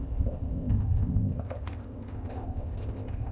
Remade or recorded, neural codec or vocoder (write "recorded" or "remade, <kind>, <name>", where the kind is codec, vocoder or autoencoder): remade, codec, ZipCodec